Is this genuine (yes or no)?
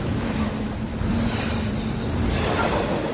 yes